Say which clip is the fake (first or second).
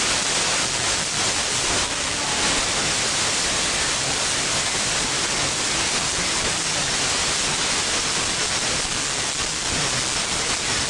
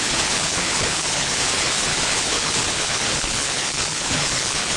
second